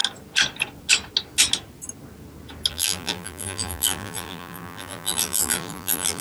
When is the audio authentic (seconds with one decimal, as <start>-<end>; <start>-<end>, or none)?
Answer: 0.0-2.7